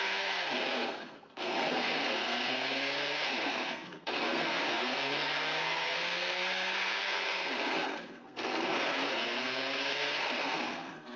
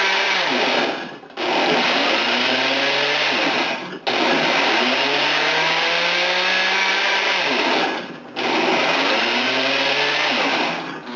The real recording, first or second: second